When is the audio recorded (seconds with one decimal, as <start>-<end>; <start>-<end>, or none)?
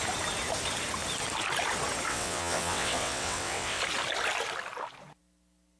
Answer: 0.0-2.1; 3.8-5.8